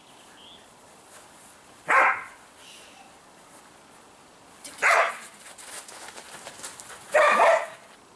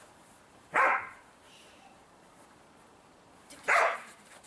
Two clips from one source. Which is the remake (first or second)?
second